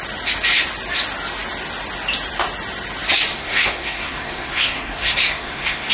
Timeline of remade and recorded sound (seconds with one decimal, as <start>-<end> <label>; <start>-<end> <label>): 0.0-3.3 recorded; 3.3-5.9 remade